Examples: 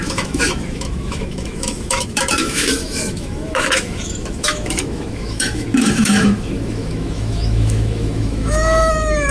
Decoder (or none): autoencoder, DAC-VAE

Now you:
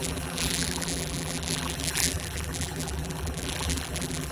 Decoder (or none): vocoder, BigVGAN v2